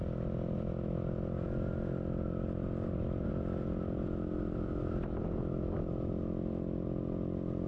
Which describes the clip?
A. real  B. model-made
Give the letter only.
A